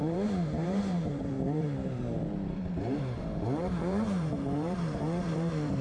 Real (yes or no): no